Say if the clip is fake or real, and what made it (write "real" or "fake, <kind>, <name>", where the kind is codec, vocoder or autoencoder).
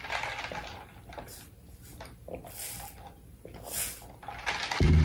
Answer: real